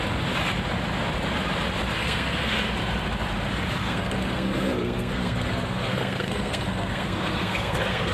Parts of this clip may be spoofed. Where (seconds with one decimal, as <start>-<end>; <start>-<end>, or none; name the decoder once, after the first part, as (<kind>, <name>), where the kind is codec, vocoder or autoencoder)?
2.0-2.6 (codec, SNAC); 3.8-8.1